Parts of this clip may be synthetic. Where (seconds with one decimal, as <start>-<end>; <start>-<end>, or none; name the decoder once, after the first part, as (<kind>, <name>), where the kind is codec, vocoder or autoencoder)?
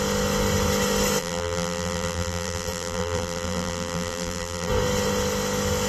1.2-4.7 (vocoder, BigVGAN v2)